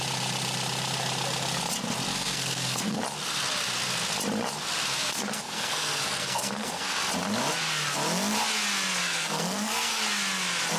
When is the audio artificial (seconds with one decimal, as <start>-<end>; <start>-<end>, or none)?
2.1-3.0; 4.9-7.0; 9.0-10.0